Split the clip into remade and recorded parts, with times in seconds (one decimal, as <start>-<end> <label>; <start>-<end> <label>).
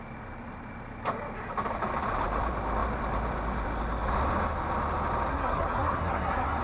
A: 0.0-5.3 recorded; 5.3-6.6 remade